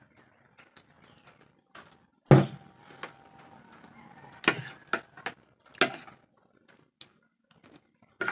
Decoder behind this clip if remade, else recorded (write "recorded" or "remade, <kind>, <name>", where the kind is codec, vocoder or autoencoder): recorded